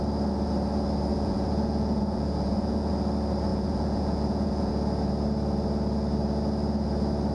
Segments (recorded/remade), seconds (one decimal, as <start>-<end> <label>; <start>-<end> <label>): 0.0-1.1 recorded; 1.1-2.9 remade; 2.9-3.5 recorded; 3.5-4.7 remade; 4.7-7.3 recorded